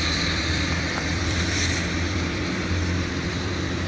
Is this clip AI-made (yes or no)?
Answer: yes